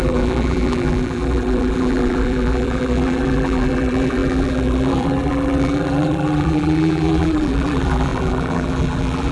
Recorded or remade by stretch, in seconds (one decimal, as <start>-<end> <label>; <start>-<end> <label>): 0.0-9.3 remade